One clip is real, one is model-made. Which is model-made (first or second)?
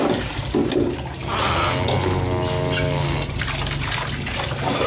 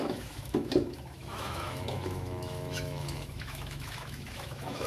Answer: second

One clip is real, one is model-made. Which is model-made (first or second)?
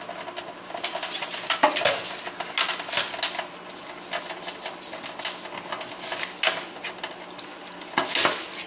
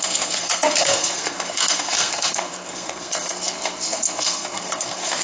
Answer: second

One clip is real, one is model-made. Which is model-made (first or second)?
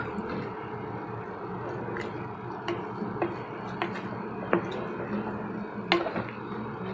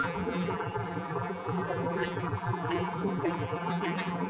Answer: second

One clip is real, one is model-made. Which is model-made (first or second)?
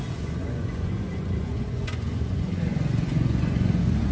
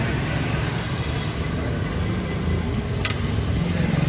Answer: first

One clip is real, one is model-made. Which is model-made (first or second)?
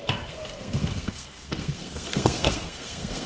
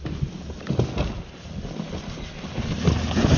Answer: first